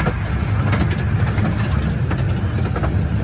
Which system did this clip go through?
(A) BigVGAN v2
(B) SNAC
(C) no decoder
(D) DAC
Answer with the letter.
C